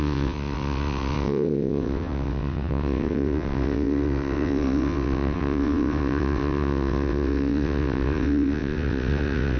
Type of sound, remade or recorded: remade